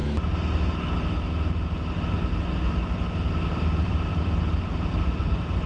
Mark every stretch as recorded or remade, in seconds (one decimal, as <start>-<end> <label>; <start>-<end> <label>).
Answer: 0.0-3.4 recorded; 3.4-5.7 remade

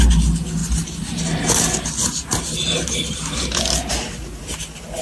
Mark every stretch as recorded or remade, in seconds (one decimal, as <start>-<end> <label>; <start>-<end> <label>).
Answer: 0.0-5.0 recorded

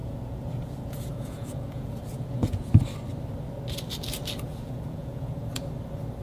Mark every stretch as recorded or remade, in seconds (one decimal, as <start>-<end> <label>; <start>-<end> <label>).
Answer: 0.0-2.7 remade; 2.7-4.5 recorded; 4.5-5.6 remade; 5.6-6.2 recorded

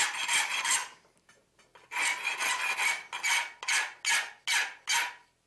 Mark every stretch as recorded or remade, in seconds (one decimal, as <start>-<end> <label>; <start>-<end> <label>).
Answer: 0.0-5.5 recorded

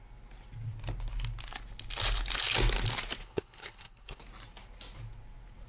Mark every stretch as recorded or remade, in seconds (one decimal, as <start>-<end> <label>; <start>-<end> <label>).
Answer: 0.0-3.2 recorded; 3.2-4.2 remade; 4.2-5.7 recorded

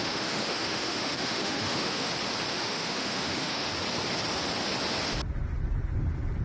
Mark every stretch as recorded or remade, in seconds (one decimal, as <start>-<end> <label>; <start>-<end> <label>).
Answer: 0.0-2.1 remade; 2.1-2.5 recorded; 2.5-3.7 remade; 3.7-6.4 recorded

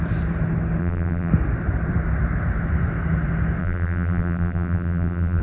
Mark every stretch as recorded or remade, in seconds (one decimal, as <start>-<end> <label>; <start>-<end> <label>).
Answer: 0.0-0.8 recorded; 0.8-1.3 remade; 1.3-3.6 recorded; 3.6-5.4 remade

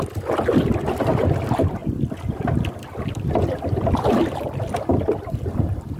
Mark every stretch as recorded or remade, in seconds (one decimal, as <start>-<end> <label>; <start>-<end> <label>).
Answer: 0.0-6.0 recorded